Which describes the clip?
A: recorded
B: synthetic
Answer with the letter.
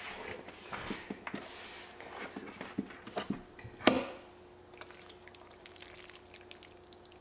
A